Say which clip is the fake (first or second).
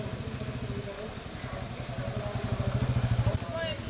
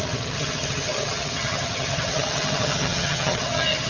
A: second